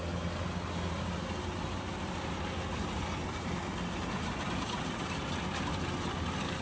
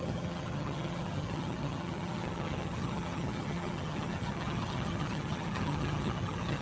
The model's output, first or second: second